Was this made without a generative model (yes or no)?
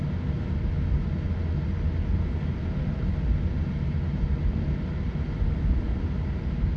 yes